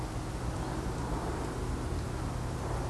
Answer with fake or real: real